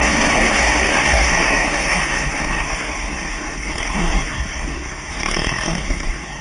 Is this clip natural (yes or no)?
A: no